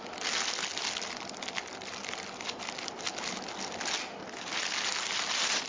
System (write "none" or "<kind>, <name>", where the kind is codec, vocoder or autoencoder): none